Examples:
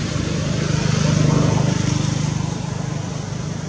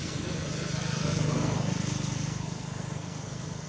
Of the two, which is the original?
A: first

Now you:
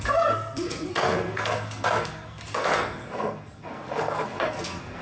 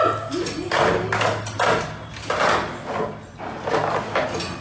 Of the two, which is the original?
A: second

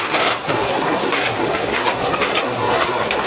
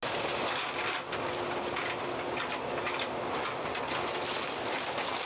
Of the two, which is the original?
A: second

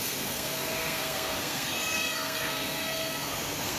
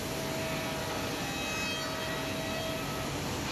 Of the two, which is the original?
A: second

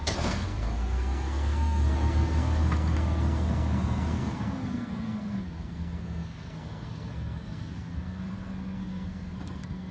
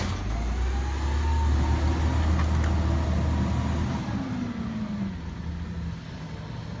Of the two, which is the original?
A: second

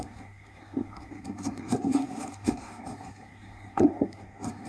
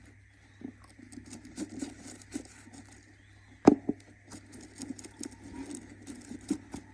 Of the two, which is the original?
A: second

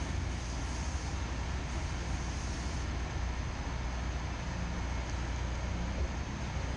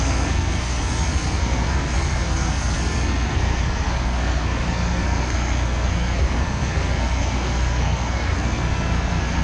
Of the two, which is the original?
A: first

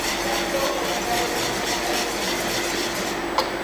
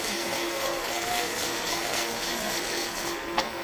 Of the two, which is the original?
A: first